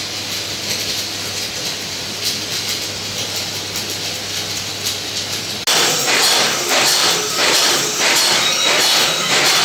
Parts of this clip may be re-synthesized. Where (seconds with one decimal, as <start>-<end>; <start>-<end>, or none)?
none